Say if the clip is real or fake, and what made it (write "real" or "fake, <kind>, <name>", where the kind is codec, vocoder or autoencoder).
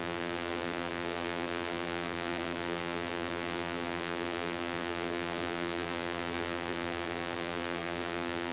fake, vocoder, BigVGAN v2